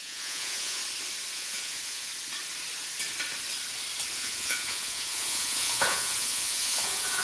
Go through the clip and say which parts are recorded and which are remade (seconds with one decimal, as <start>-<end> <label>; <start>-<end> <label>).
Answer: 0.0-0.8 remade; 0.8-1.3 recorded; 1.3-2.1 remade; 2.1-4.1 recorded; 4.1-7.2 remade